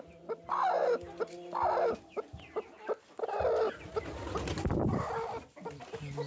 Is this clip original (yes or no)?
yes